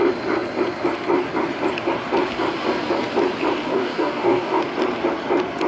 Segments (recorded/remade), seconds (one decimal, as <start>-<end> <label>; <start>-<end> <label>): 0.0-3.6 recorded; 3.6-4.6 remade; 4.6-5.7 recorded